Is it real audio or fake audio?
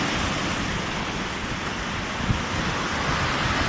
real